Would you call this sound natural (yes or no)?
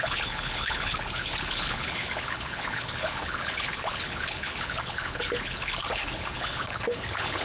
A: no